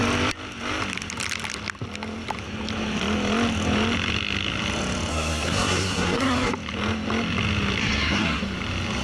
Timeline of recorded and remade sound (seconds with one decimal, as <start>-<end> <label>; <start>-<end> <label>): 0.0-5.1 recorded; 5.1-6.5 remade; 6.5-7.8 recorded; 7.8-8.4 remade; 8.4-9.0 recorded